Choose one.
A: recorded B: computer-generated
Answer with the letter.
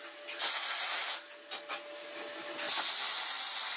A